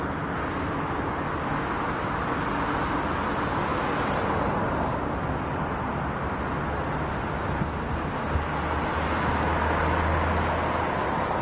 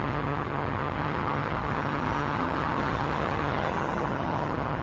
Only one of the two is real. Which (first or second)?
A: first